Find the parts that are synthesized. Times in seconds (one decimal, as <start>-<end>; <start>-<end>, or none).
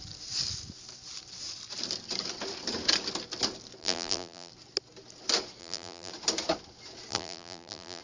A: 3.8-4.5; 5.6-6.1; 7.1-8.0